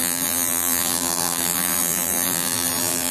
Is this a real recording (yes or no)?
no